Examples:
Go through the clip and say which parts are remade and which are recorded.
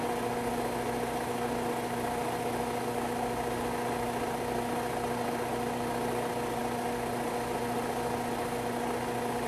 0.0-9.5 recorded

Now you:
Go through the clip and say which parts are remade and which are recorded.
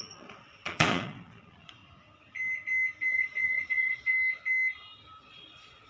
0.0-1.8 remade; 1.8-3.1 recorded; 3.1-4.1 remade; 4.1-5.2 recorded; 5.2-5.9 remade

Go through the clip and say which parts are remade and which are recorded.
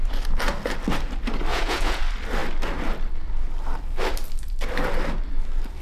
0.0-1.5 recorded; 1.5-2.0 remade; 2.0-5.8 recorded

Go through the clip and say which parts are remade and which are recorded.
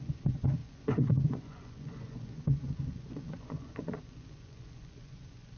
0.0-5.6 remade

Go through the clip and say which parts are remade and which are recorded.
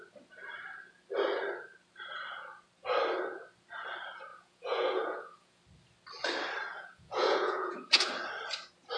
0.0-4.3 recorded; 4.3-5.6 remade; 5.6-6.7 recorded; 6.7-8.0 remade; 8.0-9.0 recorded